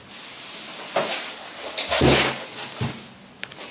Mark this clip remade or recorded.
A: recorded